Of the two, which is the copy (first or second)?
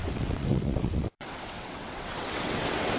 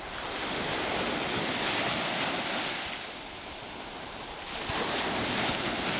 first